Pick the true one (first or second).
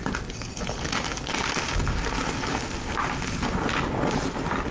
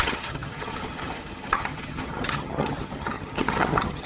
first